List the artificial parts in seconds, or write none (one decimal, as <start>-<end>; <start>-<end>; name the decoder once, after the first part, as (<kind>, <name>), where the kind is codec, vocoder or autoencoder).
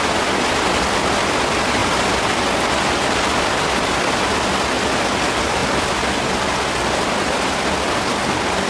none